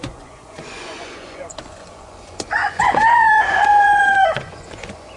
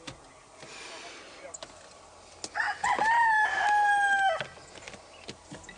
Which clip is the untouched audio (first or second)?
second